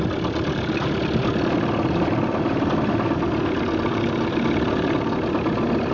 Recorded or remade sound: recorded